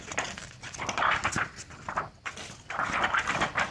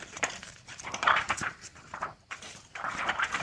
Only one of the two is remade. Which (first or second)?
second